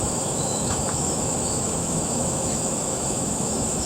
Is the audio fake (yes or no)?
yes